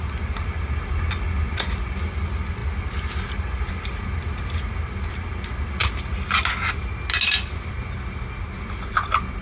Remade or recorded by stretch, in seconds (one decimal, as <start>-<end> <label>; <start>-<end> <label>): 0.0-9.4 recorded